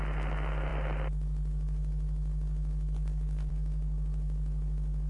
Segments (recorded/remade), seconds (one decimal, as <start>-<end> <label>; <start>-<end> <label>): 0.0-5.1 recorded